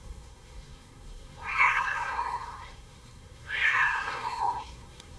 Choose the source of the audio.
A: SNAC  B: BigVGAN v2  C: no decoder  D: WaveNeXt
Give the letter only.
A